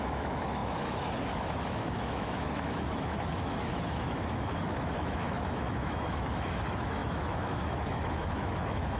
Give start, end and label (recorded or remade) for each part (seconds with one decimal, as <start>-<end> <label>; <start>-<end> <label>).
0.0-9.0 remade